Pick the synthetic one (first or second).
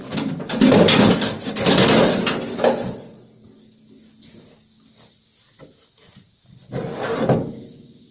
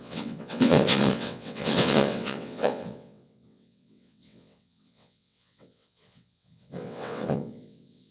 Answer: second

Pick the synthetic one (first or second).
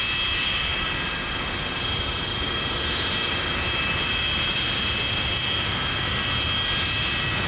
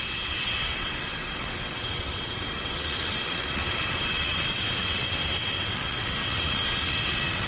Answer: second